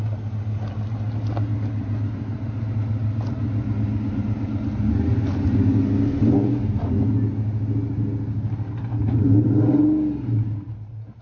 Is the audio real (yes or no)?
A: yes